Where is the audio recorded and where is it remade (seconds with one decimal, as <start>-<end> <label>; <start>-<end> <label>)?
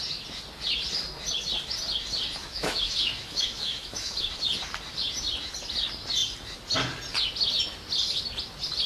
0.0-2.4 recorded; 2.4-4.3 remade; 4.3-8.9 recorded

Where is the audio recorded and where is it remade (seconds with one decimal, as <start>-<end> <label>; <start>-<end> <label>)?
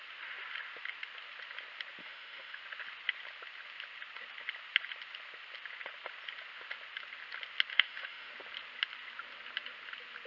0.0-2.0 recorded; 2.0-2.6 remade; 2.6-7.7 recorded; 7.7-8.3 remade; 8.3-10.3 recorded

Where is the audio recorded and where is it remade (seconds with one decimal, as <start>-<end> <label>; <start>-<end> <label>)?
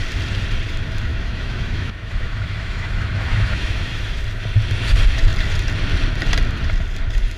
0.0-1.1 recorded; 1.1-4.2 remade; 4.2-7.4 recorded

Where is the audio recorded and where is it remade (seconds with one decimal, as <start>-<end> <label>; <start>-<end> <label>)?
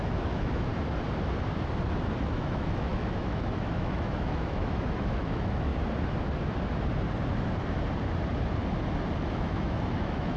0.0-0.7 remade; 0.7-2.2 recorded; 2.2-5.7 remade; 5.7-9.2 recorded; 9.2-10.4 remade